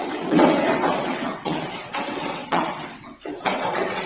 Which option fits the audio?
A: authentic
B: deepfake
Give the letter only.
B